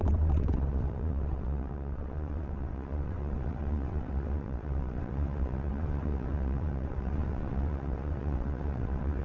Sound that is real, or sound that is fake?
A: fake